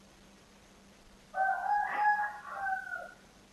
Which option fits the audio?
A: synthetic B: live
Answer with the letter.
B